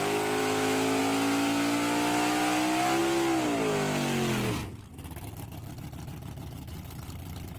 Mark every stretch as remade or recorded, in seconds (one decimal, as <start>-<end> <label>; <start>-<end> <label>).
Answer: 0.0-0.4 recorded; 0.4-1.0 remade; 1.0-7.6 recorded